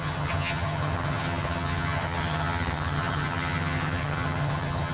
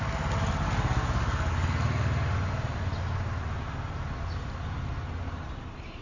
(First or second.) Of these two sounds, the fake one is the first